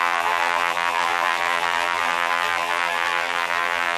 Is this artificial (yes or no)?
yes